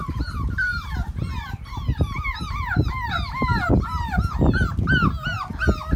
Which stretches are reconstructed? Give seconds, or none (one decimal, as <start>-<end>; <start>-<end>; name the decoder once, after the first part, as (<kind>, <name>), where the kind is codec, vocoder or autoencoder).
0.7-4.3 (vocoder, BigVGAN v2)